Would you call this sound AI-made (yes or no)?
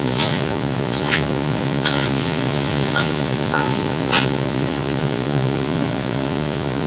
yes